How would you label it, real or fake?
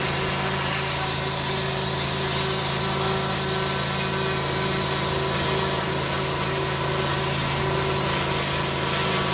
real